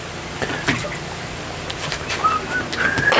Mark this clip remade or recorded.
recorded